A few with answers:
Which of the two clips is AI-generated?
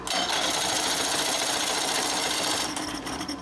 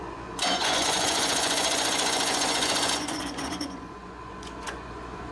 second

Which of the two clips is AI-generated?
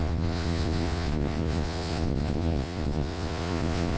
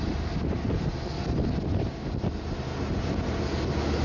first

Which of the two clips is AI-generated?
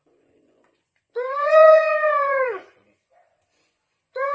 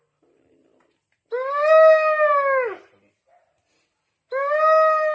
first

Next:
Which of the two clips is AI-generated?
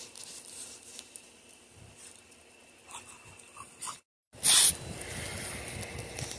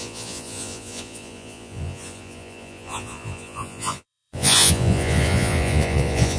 second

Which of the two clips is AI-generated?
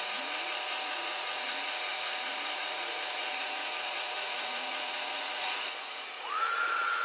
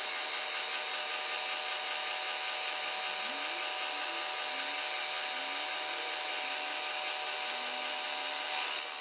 first